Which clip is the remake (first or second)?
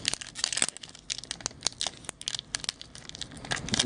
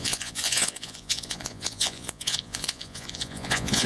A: second